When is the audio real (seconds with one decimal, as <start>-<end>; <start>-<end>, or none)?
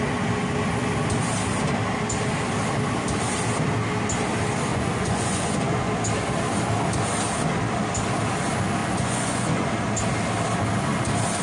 0.0-4.7; 5.9-8.8; 9.7-11.4